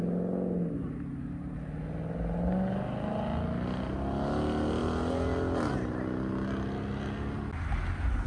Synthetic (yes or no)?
no